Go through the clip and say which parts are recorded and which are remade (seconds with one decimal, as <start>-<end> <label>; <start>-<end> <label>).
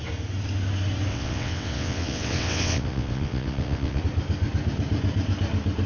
0.0-1.1 recorded; 1.1-4.0 remade; 4.0-5.9 recorded